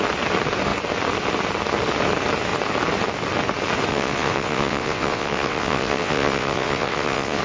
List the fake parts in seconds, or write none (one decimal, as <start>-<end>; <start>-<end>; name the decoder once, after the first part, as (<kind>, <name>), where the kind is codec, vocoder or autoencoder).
3.9-7.4 (vocoder, WaveNeXt)